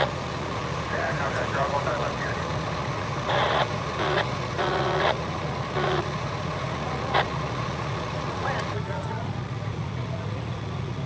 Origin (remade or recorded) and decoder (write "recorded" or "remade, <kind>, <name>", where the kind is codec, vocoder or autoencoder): remade, vocoder, Vocos